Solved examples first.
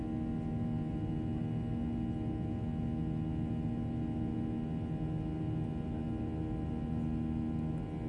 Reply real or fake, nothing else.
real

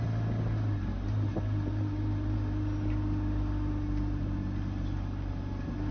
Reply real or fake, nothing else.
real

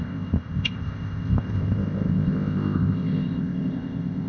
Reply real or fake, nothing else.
fake